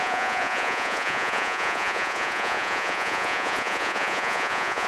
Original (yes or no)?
no